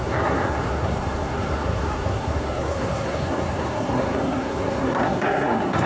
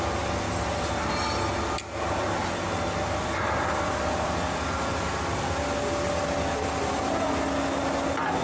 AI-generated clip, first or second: first